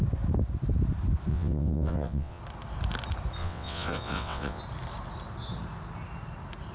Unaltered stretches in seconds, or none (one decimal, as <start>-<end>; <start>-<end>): 0.0-1.3; 2.4-3.4; 4.6-6.7